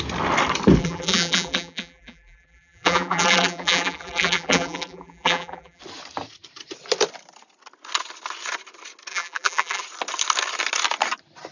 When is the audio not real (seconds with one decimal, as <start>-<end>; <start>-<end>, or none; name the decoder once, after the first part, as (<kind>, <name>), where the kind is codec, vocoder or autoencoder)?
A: 0.8-5.8 (vocoder, BigVGAN v2); 9.1-9.8

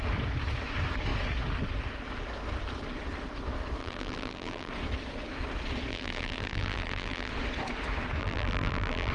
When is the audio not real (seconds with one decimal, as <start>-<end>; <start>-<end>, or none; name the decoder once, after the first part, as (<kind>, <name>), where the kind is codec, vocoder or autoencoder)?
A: 3.8-4.7 (vocoder, BigVGAN v2); 5.9-7.3; 8.2-9.1

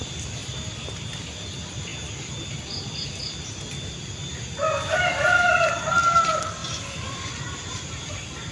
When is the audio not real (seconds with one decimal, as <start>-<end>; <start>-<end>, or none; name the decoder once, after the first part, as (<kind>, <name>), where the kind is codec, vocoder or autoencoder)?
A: none

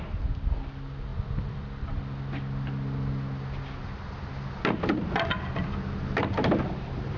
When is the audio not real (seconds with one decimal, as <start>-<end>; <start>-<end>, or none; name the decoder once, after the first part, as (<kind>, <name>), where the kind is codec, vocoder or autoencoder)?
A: 1.1-2.0 (vocoder, BigVGAN v2); 6.2-7.2